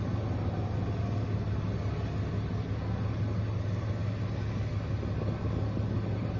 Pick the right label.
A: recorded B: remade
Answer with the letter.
A